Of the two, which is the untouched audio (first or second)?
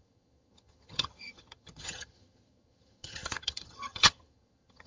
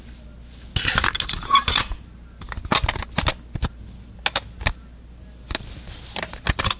second